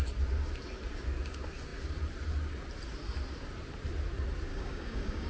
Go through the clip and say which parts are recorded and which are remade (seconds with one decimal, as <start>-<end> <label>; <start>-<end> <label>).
0.0-4.5 recorded; 4.5-5.3 remade